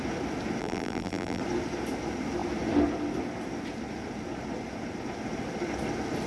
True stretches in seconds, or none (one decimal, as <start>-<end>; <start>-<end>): 0.0-0.6; 1.4-6.3